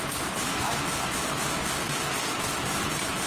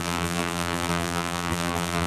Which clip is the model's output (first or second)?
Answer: second